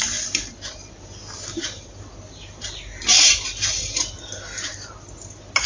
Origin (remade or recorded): recorded